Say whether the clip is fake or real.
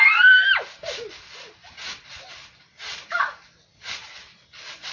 real